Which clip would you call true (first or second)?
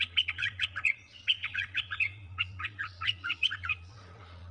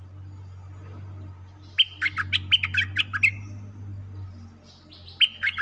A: second